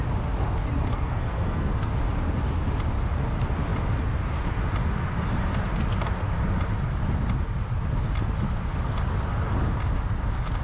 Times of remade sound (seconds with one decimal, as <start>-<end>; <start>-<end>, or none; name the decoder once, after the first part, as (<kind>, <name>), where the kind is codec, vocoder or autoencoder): 0.9-1.9 (codec, SNAC)